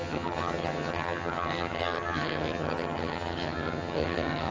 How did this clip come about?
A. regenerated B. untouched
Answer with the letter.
A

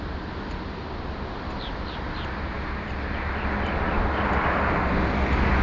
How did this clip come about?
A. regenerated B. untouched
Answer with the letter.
B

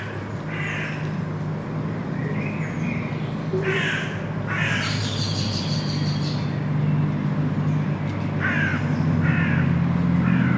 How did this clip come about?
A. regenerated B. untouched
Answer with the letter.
B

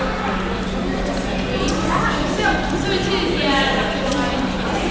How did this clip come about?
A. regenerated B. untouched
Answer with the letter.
B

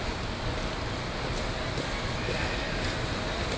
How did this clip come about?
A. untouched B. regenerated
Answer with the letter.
A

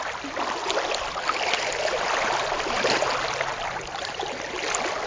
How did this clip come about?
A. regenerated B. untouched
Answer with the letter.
B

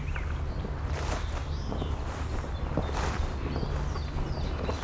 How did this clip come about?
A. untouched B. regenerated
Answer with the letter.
A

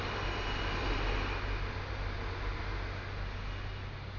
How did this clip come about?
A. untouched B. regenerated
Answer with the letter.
A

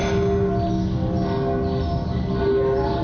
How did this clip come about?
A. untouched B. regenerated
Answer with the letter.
A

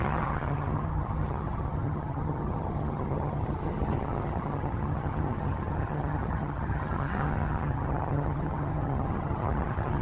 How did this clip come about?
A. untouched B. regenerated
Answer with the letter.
B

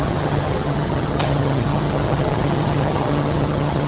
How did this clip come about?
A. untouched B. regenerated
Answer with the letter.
B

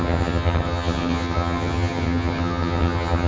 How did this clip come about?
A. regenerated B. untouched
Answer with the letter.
A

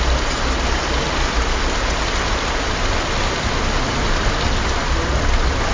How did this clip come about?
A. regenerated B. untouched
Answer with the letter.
B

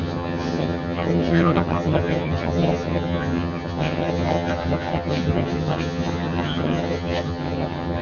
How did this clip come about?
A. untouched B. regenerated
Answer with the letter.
B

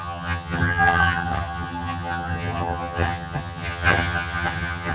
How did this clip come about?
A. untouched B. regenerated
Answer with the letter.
B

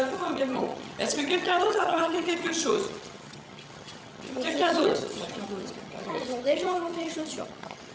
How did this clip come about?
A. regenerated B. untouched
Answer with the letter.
A